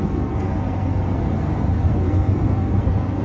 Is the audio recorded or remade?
remade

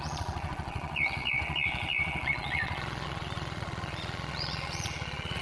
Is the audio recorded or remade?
remade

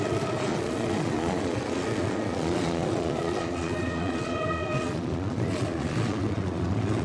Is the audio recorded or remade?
remade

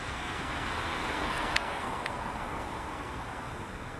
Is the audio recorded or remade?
remade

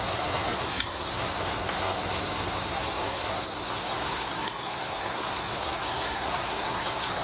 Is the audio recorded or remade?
remade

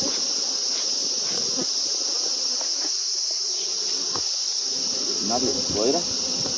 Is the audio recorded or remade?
recorded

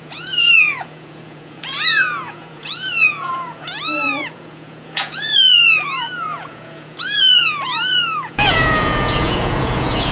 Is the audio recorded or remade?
remade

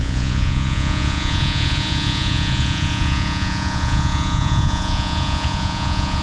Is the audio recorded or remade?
remade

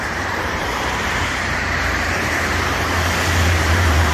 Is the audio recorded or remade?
remade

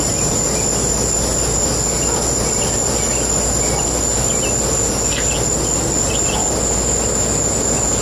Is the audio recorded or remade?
recorded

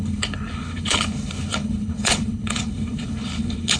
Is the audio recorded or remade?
remade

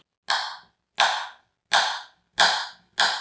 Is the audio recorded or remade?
recorded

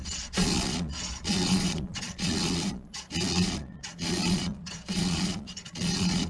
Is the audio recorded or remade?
remade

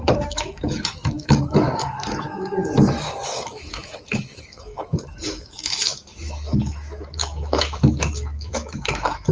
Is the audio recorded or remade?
remade